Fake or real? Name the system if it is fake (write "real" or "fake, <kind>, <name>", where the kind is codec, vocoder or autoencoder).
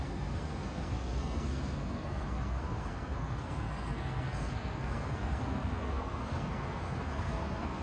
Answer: fake, codec, SNAC